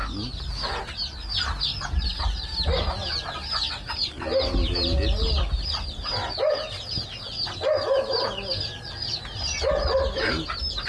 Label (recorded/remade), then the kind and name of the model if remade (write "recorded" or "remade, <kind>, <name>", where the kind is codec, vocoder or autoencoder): recorded